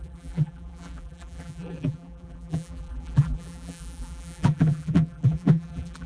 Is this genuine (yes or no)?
no